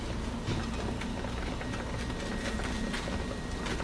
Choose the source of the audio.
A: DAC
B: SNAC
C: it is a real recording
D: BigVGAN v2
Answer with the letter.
C